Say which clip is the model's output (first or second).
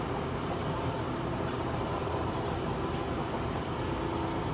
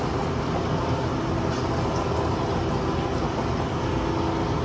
first